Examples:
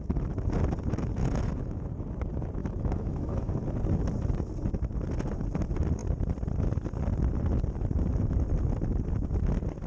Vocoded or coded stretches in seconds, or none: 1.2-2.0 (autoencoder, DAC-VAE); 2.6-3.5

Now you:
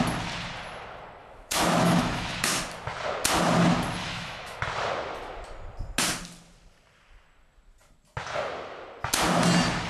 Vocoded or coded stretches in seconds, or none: 1.2-2.4 (autoencoder, DAC-VAE); 4.0-4.6

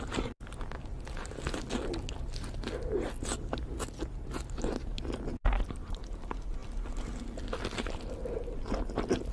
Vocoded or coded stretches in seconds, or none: none

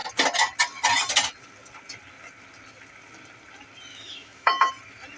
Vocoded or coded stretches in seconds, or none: 3.9-4.7 (autoencoder, DAC-VAE)

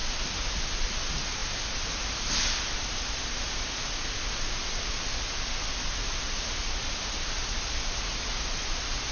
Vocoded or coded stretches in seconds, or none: none

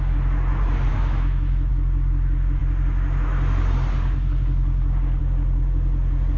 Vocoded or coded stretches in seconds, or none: 0.9-1.7 (autoencoder, DAC-VAE)